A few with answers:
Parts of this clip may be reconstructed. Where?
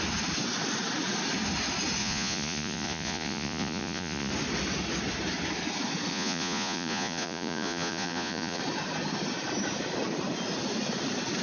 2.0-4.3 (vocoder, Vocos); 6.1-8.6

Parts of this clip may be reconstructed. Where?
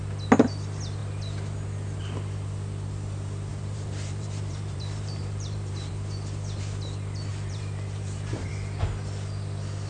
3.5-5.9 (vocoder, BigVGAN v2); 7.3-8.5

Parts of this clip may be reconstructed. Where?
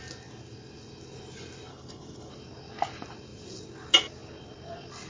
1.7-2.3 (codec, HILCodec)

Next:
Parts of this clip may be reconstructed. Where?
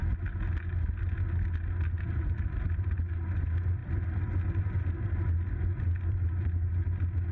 none